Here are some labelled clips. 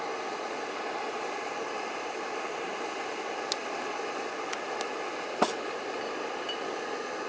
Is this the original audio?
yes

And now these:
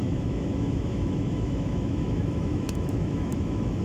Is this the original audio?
no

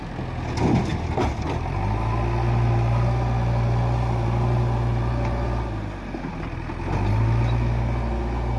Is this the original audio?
yes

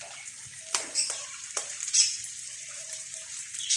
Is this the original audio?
no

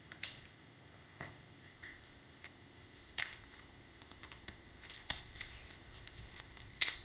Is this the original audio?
no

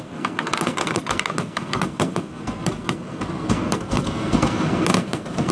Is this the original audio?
no